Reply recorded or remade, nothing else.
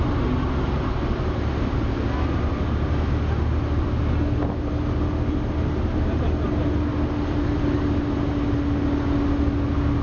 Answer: recorded